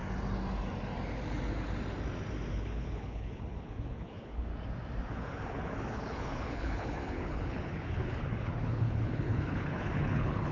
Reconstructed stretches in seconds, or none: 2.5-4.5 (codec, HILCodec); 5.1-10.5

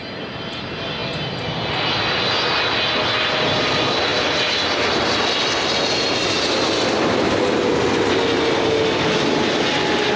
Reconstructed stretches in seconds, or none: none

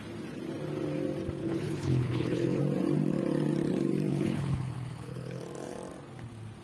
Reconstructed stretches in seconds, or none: 1.4-2.6 (codec, HILCodec); 4.1-5.4